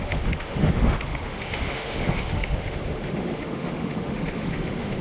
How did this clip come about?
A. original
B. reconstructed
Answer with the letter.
B